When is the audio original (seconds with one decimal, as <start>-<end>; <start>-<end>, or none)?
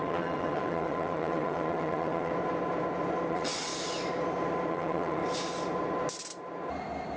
2.3-3.3; 3.7-4.7; 5.2-7.2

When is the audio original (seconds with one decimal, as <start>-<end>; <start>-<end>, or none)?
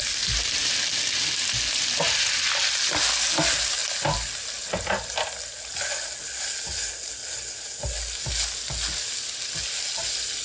0.0-10.4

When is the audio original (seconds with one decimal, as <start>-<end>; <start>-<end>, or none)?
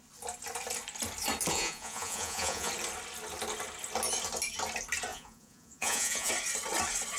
0.0-1.5; 2.7-5.1; 6.3-7.2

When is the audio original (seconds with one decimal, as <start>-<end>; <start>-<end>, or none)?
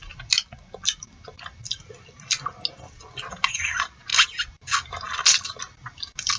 0.0-6.4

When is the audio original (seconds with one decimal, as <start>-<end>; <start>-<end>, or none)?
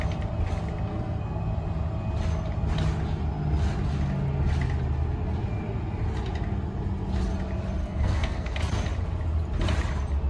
0.0-0.9; 1.4-7.8; 8.6-10.3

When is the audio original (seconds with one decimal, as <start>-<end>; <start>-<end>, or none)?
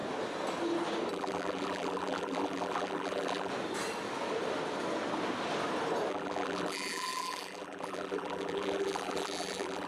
0.0-1.1; 3.5-6.1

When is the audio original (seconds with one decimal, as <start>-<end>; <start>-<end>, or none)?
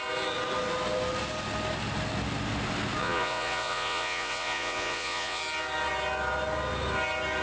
0.0-3.0; 5.4-7.4